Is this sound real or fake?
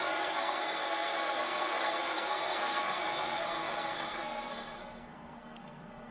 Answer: fake